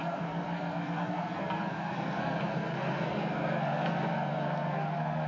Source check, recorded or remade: remade